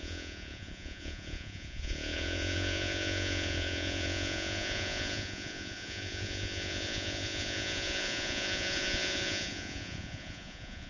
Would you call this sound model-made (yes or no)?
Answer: yes